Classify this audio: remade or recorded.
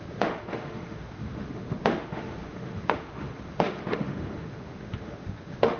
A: remade